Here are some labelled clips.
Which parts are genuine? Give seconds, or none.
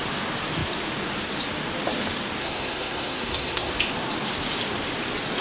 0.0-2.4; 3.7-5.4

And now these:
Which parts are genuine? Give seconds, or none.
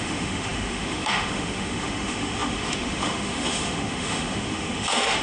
none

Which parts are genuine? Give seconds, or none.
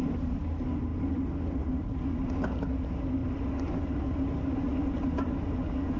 0.0-6.0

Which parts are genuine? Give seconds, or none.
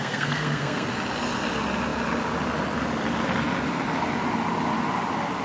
0.9-5.4